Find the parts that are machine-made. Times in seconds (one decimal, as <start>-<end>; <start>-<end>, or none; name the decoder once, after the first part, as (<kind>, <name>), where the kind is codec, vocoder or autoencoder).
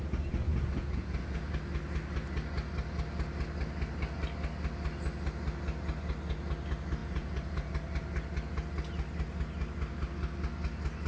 0.5-1.5 (vocoder, Vocos); 7.0-7.7